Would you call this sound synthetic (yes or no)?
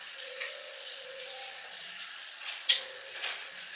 yes